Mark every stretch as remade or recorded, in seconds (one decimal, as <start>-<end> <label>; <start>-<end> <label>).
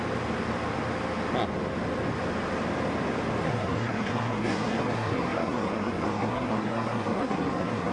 0.0-3.4 recorded; 3.4-7.9 remade